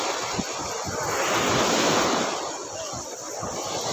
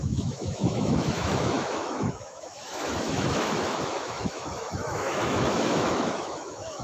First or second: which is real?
first